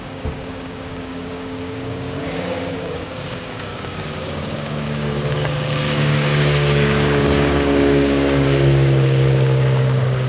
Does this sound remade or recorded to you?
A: remade